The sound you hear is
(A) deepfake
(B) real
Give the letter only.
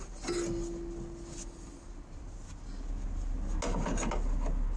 B